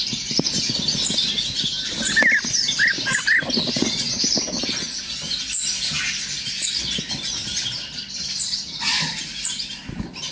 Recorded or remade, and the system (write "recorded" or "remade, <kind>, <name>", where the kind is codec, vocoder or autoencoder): recorded